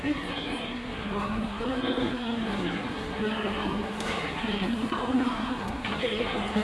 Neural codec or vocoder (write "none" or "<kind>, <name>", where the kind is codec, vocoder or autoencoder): codec, SNAC